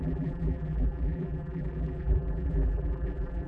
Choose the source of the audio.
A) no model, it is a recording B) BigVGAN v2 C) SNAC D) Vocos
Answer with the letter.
B